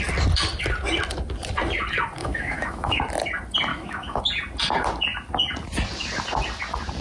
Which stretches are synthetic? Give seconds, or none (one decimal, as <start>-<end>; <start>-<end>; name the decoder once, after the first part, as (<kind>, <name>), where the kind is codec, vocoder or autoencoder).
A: 2.2-3.0 (autoencoder, DAC-VAE); 3.7-4.2